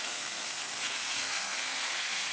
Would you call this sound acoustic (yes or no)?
no